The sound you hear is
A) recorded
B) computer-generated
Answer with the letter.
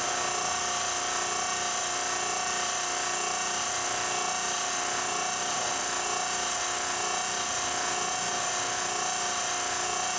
A